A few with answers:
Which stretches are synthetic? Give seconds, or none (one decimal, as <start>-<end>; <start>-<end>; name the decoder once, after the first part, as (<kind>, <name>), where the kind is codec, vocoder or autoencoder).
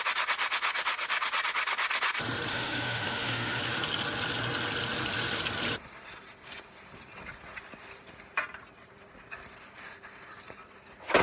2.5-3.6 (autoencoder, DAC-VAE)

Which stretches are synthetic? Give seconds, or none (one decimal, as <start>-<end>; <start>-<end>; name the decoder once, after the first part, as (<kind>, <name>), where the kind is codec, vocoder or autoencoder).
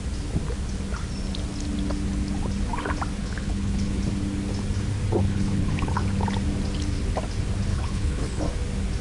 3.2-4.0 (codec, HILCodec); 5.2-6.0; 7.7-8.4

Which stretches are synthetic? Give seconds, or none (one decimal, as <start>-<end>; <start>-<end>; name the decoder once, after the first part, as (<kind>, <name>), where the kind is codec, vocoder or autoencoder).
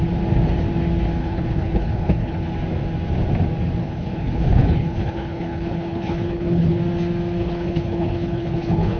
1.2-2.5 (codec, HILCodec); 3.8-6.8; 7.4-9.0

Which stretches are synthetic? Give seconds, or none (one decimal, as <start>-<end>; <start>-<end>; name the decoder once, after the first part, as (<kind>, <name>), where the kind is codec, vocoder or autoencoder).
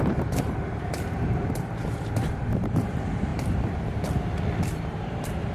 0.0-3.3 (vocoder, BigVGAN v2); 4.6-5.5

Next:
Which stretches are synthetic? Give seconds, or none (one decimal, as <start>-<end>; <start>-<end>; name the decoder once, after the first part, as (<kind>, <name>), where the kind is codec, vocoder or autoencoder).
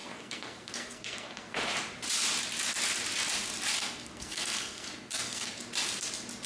0.0-1.6 (codec, SNAC); 3.8-5.6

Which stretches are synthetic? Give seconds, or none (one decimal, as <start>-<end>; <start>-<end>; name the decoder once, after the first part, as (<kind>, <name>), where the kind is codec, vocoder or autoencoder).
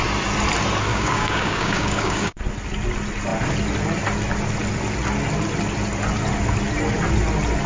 0.9-2.4 (codec, DAC)